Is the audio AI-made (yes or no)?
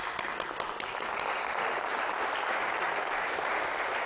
no